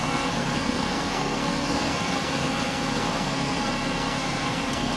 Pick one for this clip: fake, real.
fake